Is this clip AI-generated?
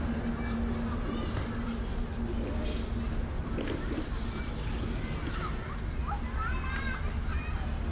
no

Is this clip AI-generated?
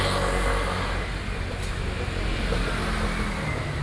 no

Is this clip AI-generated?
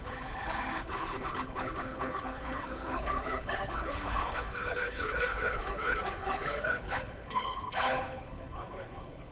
yes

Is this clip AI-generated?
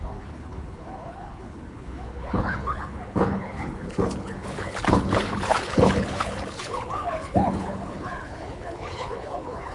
yes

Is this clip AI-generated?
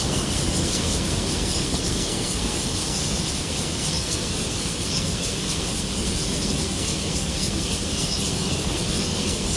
yes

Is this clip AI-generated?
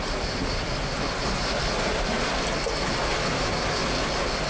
no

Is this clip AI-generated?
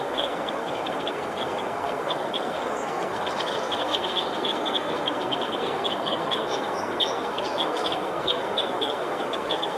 yes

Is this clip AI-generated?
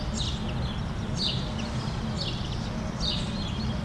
no